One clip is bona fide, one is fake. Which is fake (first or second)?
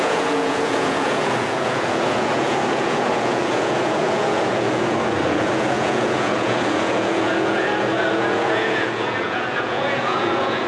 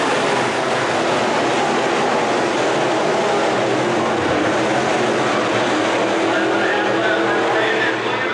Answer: first